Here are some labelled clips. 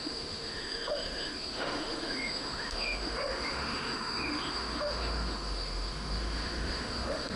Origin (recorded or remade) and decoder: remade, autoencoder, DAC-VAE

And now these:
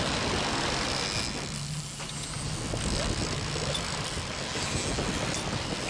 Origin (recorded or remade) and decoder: recorded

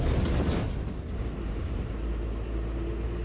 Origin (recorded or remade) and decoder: recorded